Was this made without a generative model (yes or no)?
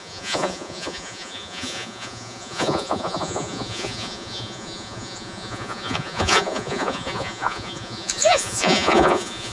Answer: no